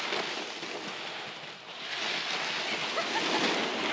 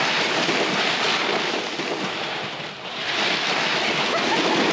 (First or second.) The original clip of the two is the first